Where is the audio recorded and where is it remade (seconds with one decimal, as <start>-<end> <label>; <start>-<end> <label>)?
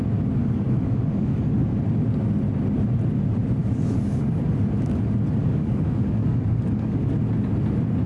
0.0-0.4 recorded; 0.4-1.8 remade; 1.8-3.6 recorded; 3.6-4.4 remade; 4.4-5.4 recorded; 5.4-7.1 remade; 7.1-8.1 recorded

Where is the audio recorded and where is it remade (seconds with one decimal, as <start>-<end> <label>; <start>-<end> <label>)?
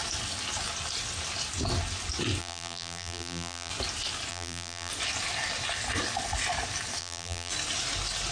0.0-2.4 recorded; 2.4-3.7 remade; 3.7-4.3 recorded; 4.3-4.9 remade; 4.9-7.0 recorded; 7.0-7.5 remade; 7.5-8.3 recorded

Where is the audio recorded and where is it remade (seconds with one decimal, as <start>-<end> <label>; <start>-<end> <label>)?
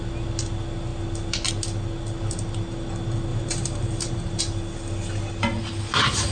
0.0-3.3 recorded; 3.3-4.4 remade; 4.4-6.3 recorded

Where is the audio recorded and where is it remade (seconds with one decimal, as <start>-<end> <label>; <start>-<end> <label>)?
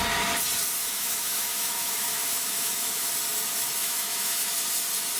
0.0-0.8 recorded; 0.8-3.1 remade; 3.1-3.8 recorded; 3.8-4.5 remade; 4.5-5.2 recorded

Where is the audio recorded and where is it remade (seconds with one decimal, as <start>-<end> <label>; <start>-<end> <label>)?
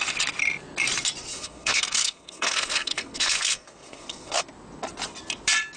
0.0-1.3 recorded; 1.3-4.4 remade; 4.4-5.8 recorded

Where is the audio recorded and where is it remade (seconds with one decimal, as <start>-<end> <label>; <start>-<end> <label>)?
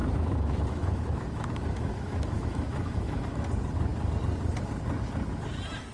0.0-3.5 remade; 3.5-5.9 recorded